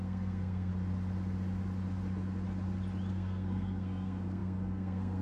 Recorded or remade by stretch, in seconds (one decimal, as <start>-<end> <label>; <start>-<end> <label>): 0.0-0.7 remade; 0.7-3.1 recorded; 3.1-5.2 remade